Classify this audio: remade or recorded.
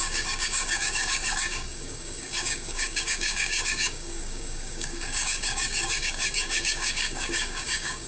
remade